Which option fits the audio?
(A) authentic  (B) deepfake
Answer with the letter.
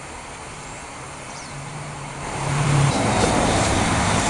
B